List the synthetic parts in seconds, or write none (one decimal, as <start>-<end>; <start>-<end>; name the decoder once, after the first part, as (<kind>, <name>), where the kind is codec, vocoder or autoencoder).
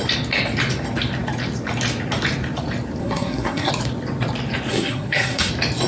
3.0-3.7 (codec, SNAC); 4.7-5.5